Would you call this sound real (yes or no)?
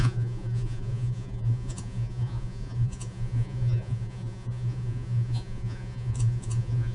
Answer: no